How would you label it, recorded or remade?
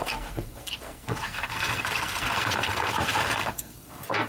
remade